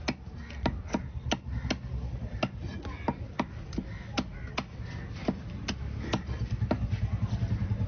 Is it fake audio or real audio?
real